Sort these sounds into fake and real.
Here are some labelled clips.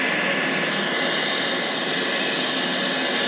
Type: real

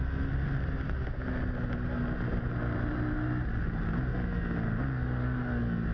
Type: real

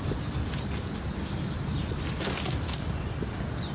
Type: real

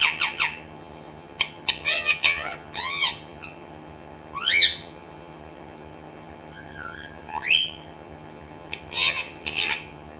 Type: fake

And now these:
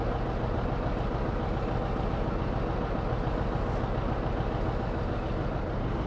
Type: real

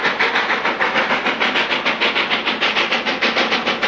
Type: real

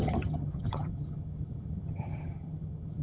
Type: fake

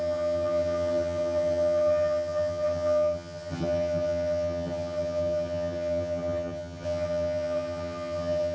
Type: fake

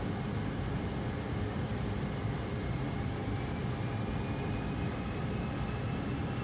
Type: real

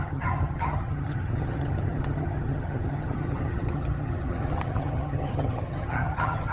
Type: fake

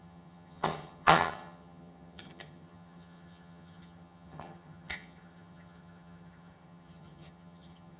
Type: fake